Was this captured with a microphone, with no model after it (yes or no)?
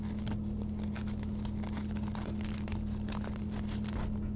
yes